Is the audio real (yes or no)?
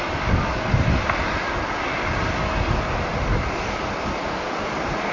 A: yes